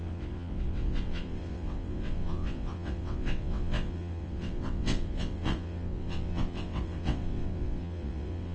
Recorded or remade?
remade